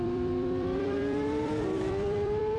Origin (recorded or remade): remade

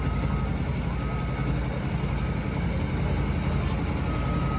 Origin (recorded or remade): recorded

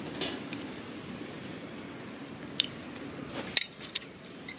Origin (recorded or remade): recorded